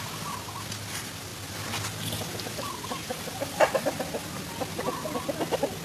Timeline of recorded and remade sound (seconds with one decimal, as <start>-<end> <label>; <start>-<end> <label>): 0.0-5.8 recorded